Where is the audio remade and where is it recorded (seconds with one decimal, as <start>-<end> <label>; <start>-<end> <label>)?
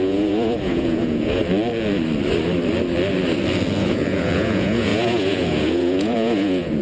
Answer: 0.0-1.4 remade; 1.4-3.8 recorded; 3.8-6.8 remade